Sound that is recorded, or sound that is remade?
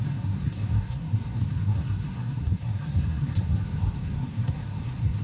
remade